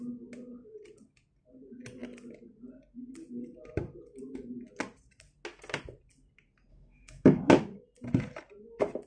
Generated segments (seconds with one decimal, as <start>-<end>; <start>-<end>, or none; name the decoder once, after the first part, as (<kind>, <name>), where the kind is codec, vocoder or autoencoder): 6.7-7.5 (autoencoder, DAC-VAE)